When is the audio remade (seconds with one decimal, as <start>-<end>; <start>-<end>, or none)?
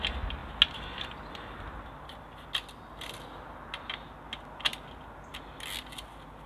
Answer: none